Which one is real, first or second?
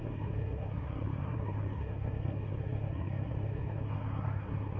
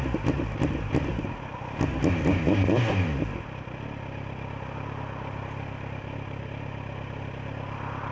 second